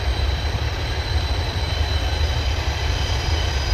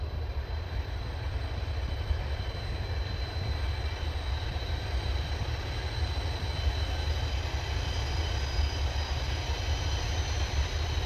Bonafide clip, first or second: second